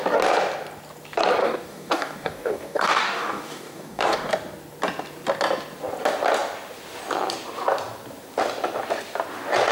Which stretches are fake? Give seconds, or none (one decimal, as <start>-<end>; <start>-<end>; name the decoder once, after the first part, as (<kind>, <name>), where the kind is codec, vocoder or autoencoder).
1.4-4.3 (codec, DAC)